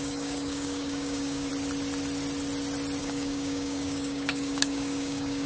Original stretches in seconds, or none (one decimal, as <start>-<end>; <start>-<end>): 1.5-3.0